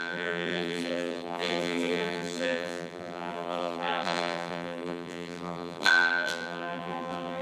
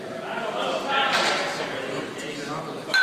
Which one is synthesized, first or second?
first